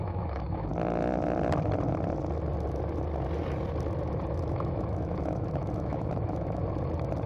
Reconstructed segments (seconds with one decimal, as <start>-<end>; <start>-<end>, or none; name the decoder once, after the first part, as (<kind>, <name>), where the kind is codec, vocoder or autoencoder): 0.0-0.7 (autoencoder, DAC-VAE); 4.3-6.6